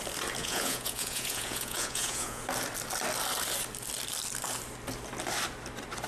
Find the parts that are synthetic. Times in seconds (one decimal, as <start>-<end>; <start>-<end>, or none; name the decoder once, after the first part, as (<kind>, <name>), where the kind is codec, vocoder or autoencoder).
0.4-2.4 (vocoder, Vocos)